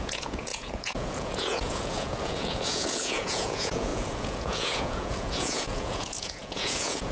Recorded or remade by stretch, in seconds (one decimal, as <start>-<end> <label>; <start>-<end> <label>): 0.0-7.1 remade